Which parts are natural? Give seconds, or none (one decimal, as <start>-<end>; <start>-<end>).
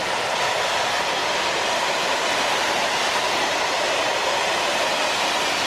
0.0-1.2; 4.6-5.7